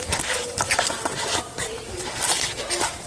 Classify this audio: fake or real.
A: real